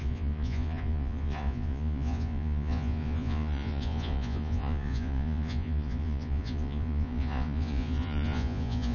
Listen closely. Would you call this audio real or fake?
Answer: fake